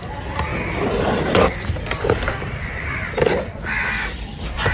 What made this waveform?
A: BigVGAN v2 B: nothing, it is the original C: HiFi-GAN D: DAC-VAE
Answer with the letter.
A